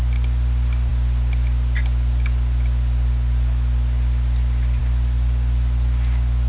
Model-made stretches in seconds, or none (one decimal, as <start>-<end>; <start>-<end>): none